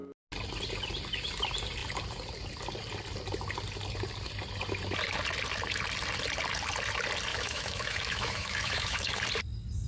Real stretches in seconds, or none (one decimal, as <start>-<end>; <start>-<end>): 0.0-7.3; 9.2-9.9